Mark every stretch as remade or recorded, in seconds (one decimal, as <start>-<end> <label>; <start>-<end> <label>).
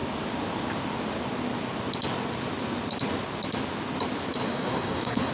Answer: 0.0-4.4 recorded; 4.4-5.3 remade